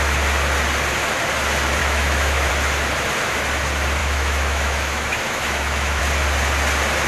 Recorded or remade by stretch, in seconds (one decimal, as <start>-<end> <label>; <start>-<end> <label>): 0.0-1.8 recorded; 1.8-2.5 remade; 2.5-4.0 recorded; 4.0-6.0 remade; 6.0-7.1 recorded